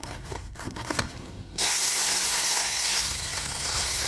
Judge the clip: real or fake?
fake